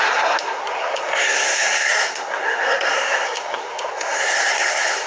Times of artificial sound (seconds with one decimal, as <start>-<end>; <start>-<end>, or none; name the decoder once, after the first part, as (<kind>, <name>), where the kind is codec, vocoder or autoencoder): 0.0-5.1 (codec, SNAC)